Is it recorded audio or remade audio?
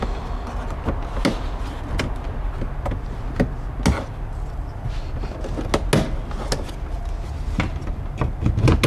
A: recorded